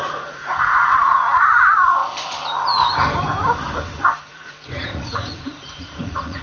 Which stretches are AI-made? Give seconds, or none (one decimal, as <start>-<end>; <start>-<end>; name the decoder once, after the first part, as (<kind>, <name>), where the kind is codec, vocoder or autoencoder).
0.0-2.0 (vocoder, Vocos); 4.3-6.4